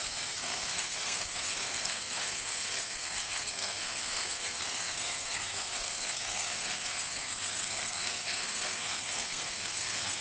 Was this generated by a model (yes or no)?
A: yes